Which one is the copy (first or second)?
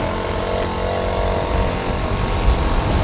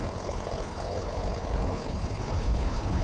second